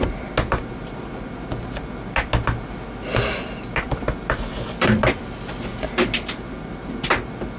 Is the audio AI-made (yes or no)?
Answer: no